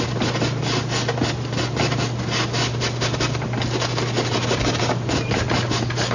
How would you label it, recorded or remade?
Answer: recorded